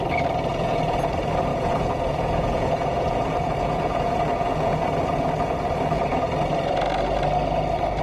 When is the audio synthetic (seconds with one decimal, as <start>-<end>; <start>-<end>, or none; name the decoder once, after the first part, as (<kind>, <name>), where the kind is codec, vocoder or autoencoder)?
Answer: 0.5-1.1 (vocoder, Vocos); 1.5-4.8